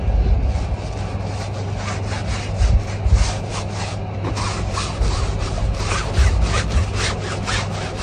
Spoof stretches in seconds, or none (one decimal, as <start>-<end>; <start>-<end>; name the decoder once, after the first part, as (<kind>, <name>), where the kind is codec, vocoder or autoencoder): none